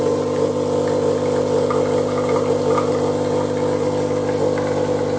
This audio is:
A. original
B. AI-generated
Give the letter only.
A